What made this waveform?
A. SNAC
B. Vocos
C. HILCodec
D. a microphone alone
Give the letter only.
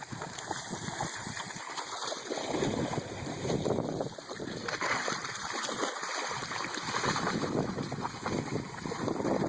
D